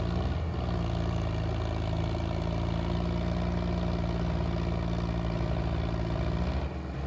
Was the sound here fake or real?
real